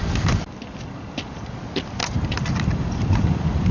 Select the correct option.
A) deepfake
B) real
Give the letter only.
B